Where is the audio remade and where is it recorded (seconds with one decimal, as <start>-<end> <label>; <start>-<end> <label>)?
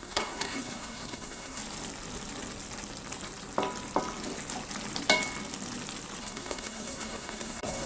0.0-1.6 remade; 1.6-6.2 recorded; 6.2-7.9 remade